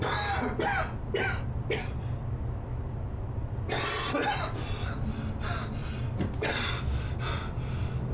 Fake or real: real